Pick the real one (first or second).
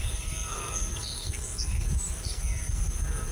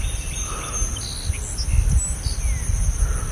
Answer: second